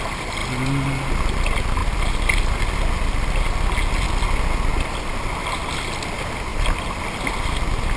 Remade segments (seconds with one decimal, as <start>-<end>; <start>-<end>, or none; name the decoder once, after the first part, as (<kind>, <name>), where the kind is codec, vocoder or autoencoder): none